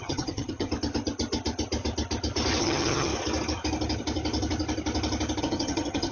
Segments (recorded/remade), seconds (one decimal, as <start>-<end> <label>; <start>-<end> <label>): 0.0-0.7 remade; 0.7-2.6 recorded; 2.6-3.1 remade; 3.1-5.4 recorded; 5.4-6.1 remade